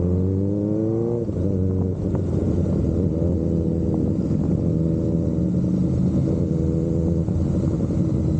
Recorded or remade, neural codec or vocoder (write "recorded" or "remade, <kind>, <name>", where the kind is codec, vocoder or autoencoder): recorded